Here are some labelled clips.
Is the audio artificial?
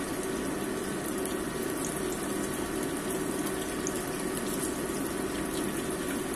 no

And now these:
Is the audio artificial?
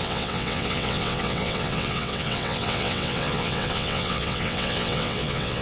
yes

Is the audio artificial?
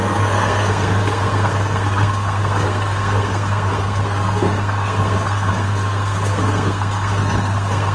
yes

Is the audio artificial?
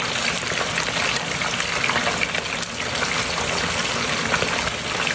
no